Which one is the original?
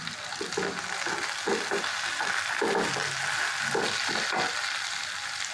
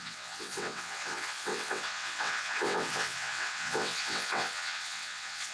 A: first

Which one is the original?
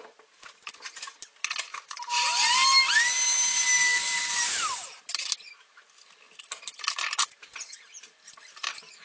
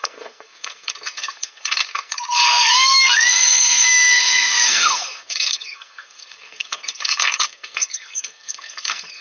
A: first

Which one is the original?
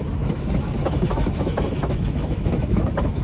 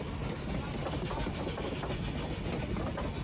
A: second